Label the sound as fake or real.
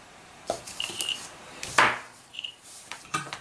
fake